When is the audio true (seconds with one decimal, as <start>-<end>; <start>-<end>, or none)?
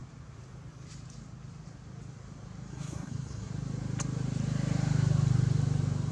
0.0-2.7; 3.5-6.1